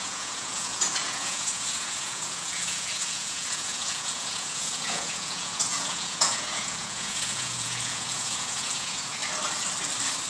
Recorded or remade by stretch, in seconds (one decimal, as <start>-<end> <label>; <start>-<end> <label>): 0.0-9.2 remade; 9.2-10.3 recorded